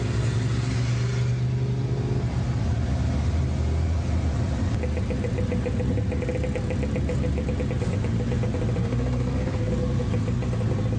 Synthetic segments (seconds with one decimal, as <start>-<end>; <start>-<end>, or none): 8.8-9.7